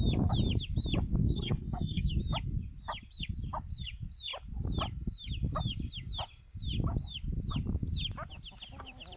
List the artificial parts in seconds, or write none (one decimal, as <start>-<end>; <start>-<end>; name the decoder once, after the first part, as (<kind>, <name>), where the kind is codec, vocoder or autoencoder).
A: 1.2-2.1 (codec, SNAC)